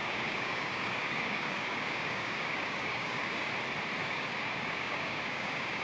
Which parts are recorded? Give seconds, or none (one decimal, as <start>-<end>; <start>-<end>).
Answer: 3.5-4.0